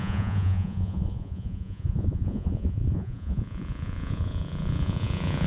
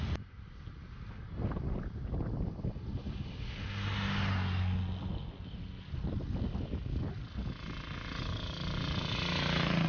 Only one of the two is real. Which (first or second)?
second